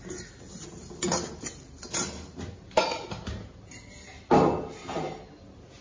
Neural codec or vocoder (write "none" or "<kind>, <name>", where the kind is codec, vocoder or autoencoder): none